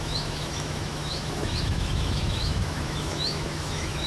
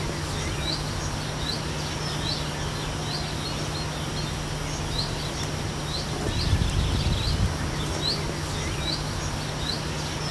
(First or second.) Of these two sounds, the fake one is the first